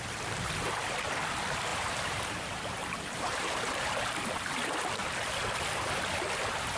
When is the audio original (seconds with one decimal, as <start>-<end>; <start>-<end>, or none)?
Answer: 0.0-1.7; 4.3-6.8